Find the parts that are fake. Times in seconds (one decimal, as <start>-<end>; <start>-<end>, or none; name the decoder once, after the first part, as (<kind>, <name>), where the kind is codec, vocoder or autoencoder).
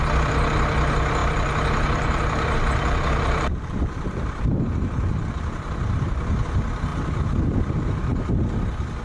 1.2-5.3 (vocoder, BigVGAN v2)